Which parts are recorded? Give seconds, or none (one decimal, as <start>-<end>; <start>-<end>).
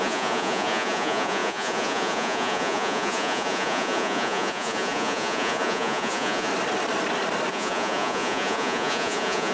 6.5-7.5